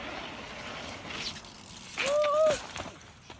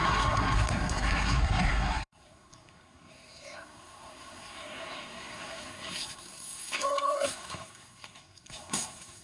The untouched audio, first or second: first